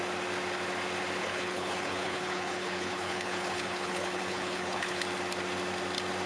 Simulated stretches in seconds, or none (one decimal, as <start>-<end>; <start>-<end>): 1.2-5.0